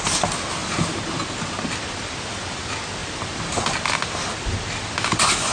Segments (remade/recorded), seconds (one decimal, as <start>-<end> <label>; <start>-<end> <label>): 0.0-5.5 recorded